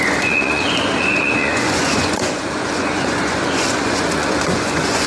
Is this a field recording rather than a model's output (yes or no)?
no